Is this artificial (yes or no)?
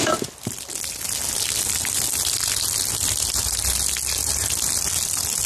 no